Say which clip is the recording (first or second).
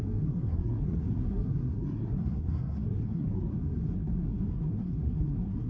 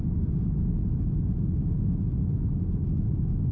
second